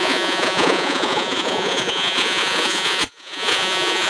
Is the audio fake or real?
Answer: fake